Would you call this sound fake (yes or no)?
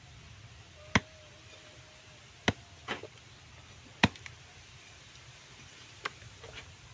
no